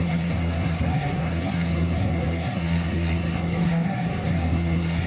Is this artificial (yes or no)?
yes